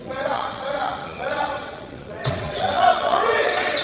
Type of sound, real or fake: fake